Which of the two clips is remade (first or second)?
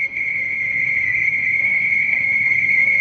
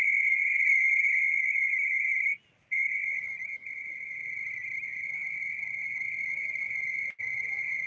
first